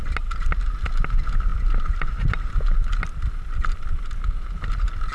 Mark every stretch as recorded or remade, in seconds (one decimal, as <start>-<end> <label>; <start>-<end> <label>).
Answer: 0.0-5.1 recorded